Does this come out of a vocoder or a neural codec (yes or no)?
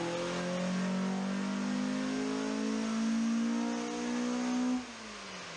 no